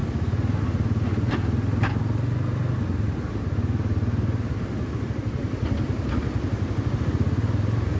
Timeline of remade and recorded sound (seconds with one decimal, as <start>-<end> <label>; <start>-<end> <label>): 0.0-8.0 recorded